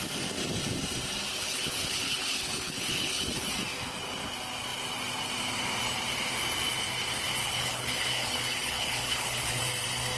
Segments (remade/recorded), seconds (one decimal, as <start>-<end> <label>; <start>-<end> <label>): 0.0-1.3 recorded; 1.3-3.5 remade; 3.5-7.4 recorded; 7.4-9.6 remade; 9.6-10.2 recorded